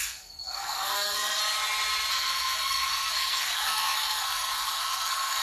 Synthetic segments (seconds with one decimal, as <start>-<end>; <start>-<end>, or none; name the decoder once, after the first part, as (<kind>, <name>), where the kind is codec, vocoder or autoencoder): 0.0-1.4 (codec, SNAC); 2.1-5.4